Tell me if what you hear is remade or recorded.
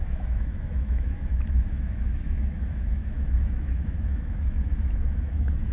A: remade